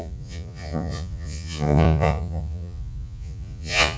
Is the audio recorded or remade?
remade